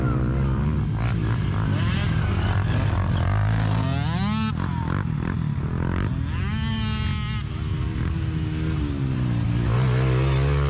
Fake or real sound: real